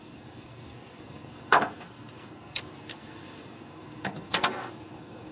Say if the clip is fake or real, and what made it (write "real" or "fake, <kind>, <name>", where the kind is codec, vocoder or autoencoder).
fake, codec, SNAC